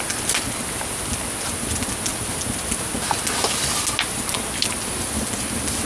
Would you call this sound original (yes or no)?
yes